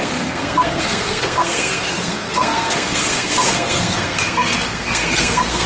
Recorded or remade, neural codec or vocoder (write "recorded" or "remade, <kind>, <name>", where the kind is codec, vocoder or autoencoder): remade, codec, SNAC